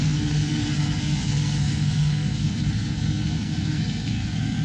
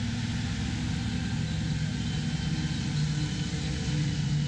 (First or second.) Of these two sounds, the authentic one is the second